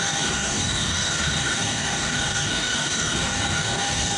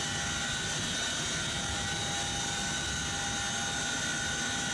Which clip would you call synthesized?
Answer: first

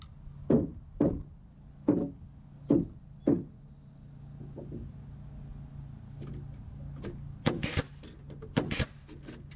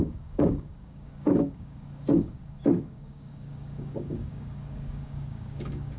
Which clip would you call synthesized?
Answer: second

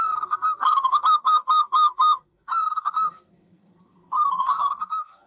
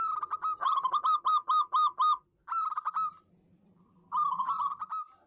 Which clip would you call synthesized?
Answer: first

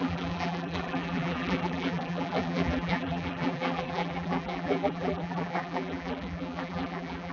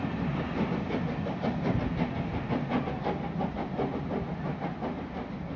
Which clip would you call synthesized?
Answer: first